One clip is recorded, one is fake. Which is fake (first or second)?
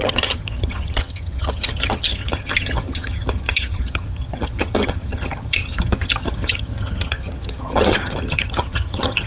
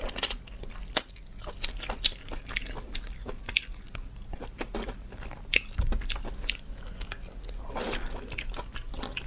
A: first